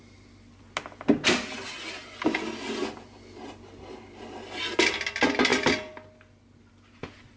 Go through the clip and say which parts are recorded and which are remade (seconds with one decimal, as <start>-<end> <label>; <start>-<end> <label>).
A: 0.0-7.4 recorded